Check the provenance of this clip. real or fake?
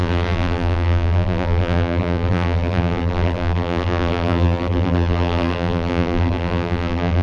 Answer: fake